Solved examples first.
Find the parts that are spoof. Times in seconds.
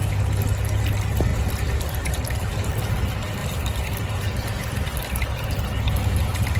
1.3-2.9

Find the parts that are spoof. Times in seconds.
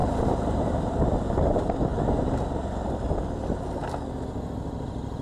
0.0-1.3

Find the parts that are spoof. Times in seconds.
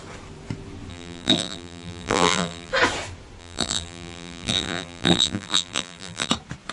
0.9-2.7; 3.4-6.3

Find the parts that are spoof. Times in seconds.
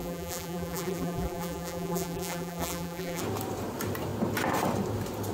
0.0-3.2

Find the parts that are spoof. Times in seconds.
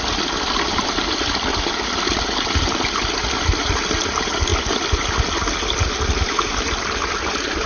none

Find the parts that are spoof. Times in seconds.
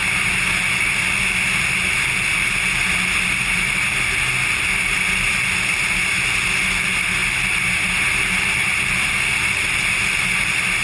none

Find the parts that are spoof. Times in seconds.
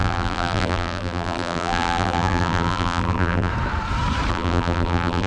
0.0-3.5; 4.3-5.3